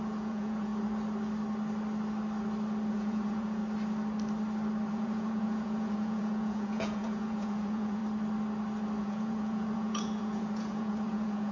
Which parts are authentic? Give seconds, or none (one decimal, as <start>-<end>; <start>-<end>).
0.7-2.9; 3.6-4.9; 8.0-9.0